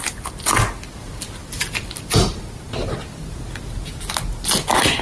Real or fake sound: real